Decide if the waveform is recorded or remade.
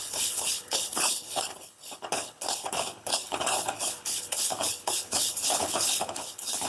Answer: remade